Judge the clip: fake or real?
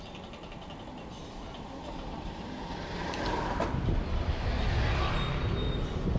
real